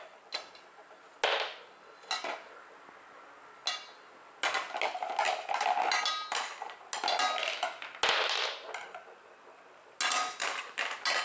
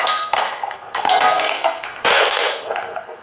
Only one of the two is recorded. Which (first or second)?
first